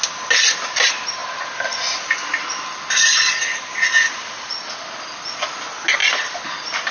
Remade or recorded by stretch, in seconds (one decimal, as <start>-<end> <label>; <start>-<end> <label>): 0.0-6.9 recorded